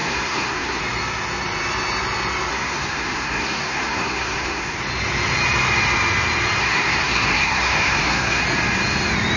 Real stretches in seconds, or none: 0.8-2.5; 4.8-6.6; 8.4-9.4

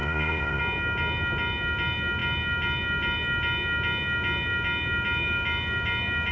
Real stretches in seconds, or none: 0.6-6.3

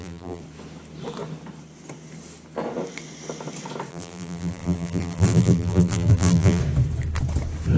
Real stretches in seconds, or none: 0.4-3.9; 6.6-7.8

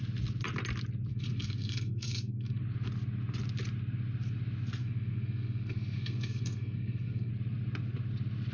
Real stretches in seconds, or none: 0.0-1.1; 2.6-4.8; 7.3-8.5

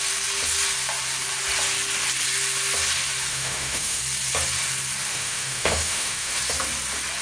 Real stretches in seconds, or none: 0.0-3.3; 4.0-5.1; 6.4-7.2

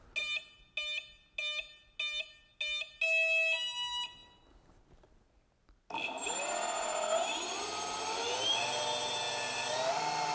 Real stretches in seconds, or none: 0.0-10.3